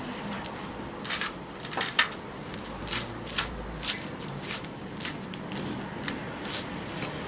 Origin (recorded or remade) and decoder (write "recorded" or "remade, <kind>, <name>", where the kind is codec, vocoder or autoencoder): recorded